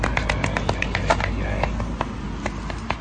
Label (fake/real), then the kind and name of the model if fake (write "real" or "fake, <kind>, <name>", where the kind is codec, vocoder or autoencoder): real